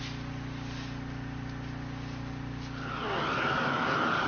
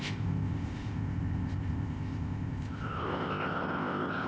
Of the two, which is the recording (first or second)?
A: first